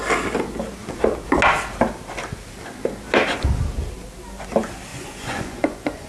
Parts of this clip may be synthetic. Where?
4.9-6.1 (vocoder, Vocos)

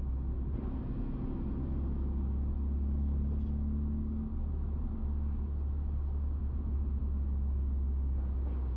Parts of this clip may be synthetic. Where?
none

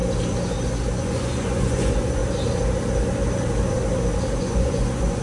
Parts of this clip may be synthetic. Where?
1.0-2.2 (vocoder, Vocos); 4.4-5.2